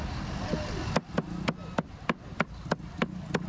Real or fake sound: real